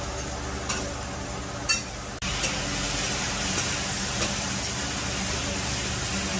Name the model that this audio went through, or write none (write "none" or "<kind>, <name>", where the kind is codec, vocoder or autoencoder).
none